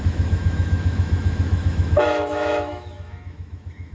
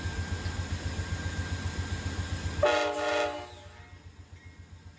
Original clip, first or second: second